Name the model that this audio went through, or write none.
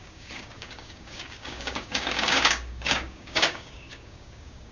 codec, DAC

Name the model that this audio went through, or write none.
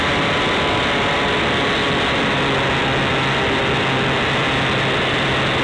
none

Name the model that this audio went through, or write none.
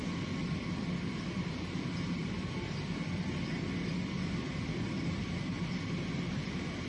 none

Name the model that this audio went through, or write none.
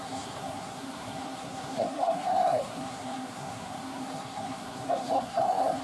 codec, SNAC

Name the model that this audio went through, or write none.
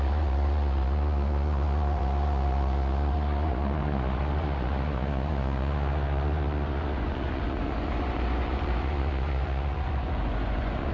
vocoder, Vocos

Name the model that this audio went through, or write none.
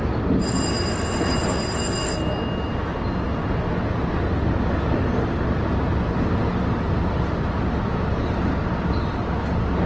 none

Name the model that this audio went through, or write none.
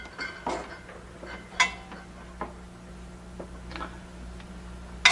none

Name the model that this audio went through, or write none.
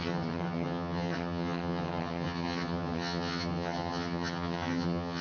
vocoder, HiFi-GAN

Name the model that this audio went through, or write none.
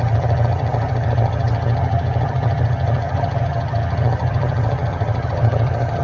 vocoder, HiFi-GAN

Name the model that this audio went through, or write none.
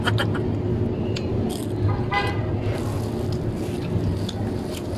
none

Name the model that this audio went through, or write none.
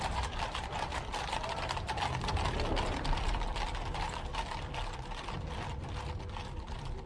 none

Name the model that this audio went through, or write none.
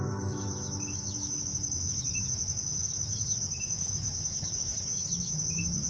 autoencoder, DAC-VAE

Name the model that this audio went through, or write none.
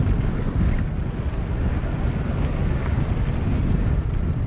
none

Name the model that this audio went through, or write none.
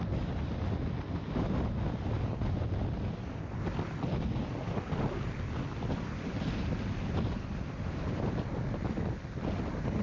none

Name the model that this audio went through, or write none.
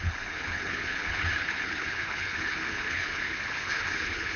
codec, HILCodec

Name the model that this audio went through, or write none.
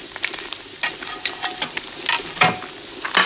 none